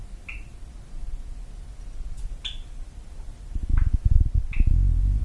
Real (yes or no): yes